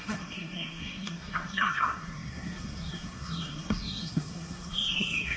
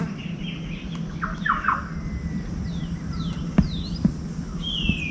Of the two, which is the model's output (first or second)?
first